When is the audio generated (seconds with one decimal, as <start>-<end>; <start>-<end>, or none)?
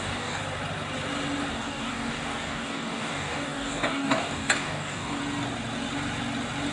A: 0.0-0.4; 1.5-5.2